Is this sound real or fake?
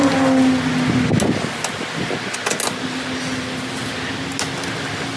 real